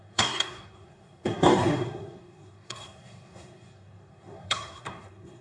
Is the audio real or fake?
fake